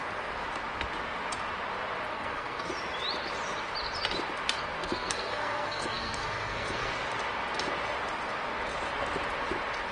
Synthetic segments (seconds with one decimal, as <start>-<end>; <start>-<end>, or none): 2.1-2.7; 4.8-6.9